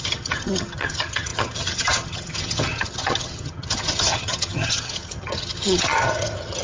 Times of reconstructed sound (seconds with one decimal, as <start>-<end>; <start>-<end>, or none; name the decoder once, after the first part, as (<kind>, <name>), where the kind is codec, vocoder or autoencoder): 0.0-6.6 (vocoder, HiFi-GAN)